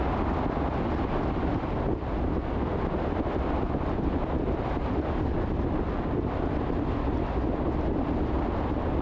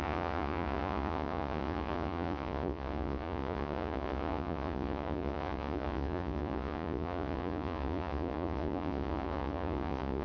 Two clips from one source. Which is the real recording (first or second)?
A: first